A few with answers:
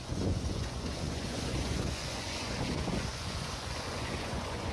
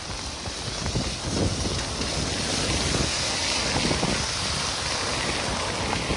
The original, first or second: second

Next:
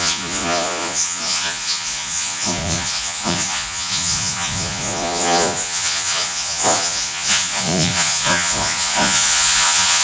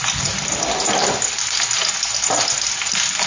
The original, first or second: second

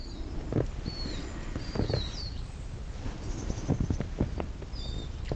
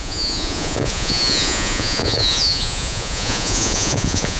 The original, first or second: first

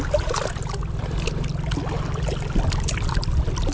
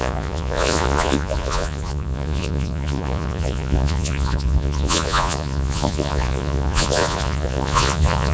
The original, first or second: first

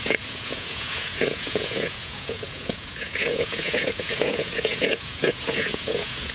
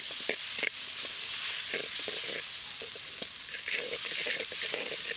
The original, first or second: second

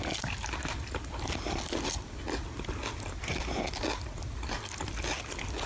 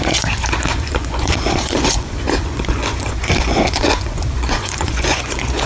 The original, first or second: first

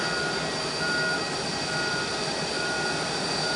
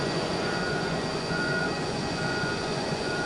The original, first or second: first